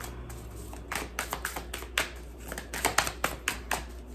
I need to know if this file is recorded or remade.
recorded